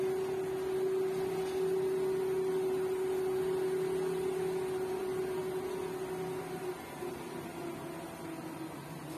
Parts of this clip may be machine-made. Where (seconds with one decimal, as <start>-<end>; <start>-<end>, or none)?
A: none